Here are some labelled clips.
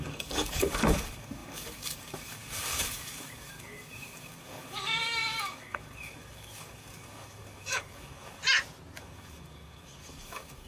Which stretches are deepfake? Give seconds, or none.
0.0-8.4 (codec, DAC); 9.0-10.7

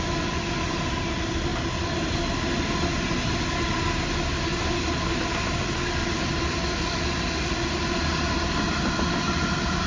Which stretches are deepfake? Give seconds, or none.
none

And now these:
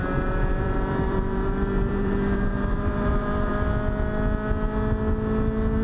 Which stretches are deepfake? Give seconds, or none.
0.0-3.5 (vocoder, BigVGAN v2)